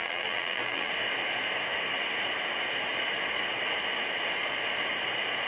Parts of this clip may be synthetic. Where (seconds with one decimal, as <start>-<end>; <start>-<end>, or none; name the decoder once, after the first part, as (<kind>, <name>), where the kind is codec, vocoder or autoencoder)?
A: 0.0-0.9 (vocoder, BigVGAN v2)